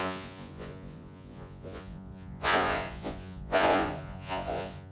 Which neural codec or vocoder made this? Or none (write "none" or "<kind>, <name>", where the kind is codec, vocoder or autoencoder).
vocoder, Vocos